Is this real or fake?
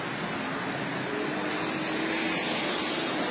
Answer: real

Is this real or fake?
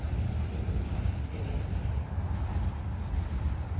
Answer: real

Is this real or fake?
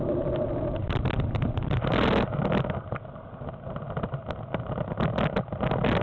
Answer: real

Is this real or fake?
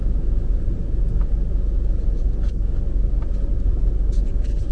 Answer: real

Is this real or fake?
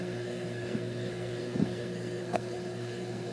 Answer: fake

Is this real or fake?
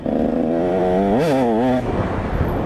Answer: real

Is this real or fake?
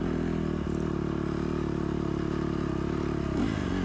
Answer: real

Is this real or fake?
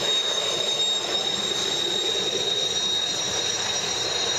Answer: real